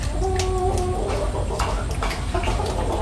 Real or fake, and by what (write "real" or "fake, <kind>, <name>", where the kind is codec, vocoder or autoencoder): real